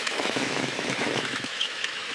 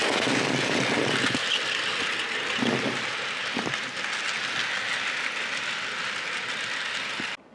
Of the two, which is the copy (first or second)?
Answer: first